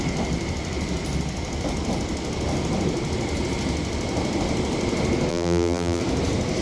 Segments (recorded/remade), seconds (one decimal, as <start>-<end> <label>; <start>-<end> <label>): 0.0-5.3 recorded; 5.3-6.0 remade; 6.0-6.6 recorded

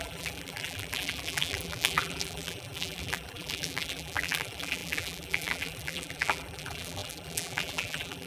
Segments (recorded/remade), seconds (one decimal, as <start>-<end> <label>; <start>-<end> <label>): 0.0-8.3 remade

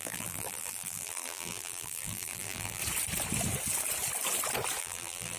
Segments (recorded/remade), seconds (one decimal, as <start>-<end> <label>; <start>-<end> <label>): 0.0-2.8 remade; 2.8-4.8 recorded; 4.8-5.4 remade

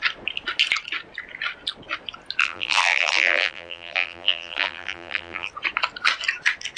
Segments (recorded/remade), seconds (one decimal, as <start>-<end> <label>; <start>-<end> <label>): 0.0-2.4 recorded; 2.4-5.5 remade; 5.5-6.8 recorded

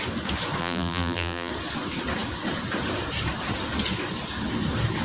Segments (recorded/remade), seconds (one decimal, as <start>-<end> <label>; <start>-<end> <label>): 0.0-0.6 recorded; 0.6-1.5 remade; 1.5-5.0 recorded

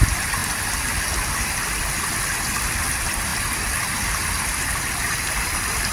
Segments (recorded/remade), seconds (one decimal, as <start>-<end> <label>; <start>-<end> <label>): 0.0-0.4 remade; 0.4-2.0 recorded; 2.0-5.9 remade